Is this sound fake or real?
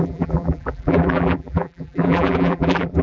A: fake